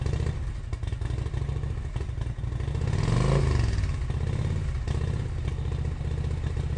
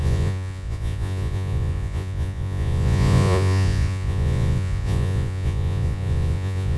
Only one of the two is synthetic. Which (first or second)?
second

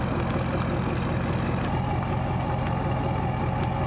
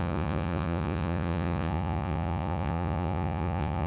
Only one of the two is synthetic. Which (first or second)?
second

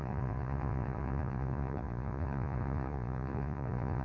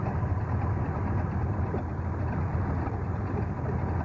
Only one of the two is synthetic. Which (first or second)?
first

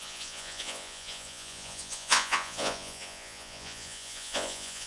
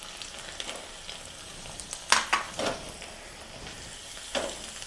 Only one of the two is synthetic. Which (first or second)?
first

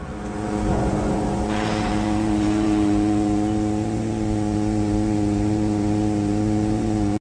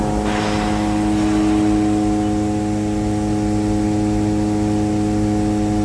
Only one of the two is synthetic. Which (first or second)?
first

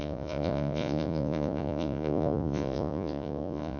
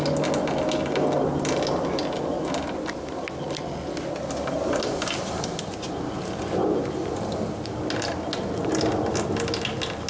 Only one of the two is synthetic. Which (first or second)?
first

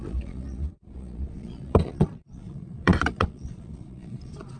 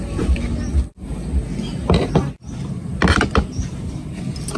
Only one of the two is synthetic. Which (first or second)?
first